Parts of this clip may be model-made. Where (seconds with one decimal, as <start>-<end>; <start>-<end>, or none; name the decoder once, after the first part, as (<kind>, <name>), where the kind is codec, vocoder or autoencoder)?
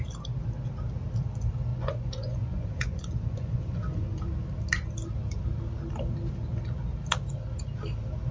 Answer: 1.7-4.3 (vocoder, Vocos)